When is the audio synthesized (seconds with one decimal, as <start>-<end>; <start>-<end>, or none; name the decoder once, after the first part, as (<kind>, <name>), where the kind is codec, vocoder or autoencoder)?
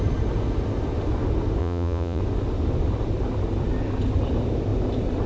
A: 1.6-2.2 (vocoder, Vocos)